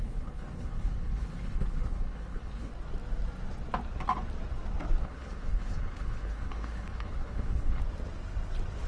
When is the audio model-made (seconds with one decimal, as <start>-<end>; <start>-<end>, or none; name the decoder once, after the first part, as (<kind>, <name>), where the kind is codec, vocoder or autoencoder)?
0.0-2.7 (codec, HILCodec); 5.0-7.8